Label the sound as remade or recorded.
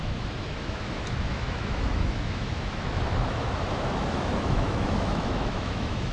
remade